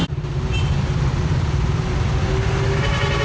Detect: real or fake real